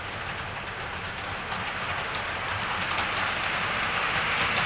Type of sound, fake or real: real